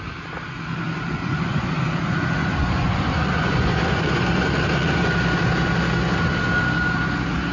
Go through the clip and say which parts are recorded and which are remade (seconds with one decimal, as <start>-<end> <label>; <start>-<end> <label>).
0.0-1.2 recorded; 1.2-1.8 remade; 1.8-2.4 recorded; 2.4-5.1 remade; 5.1-7.5 recorded